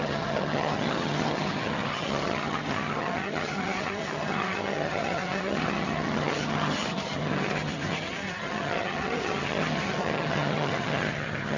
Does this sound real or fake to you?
fake